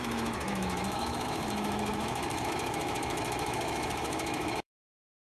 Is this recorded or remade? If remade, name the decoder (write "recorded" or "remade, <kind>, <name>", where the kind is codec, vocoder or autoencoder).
remade, autoencoder, DAC-VAE